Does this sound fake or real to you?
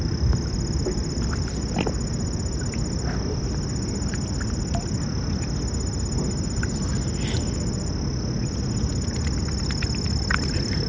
real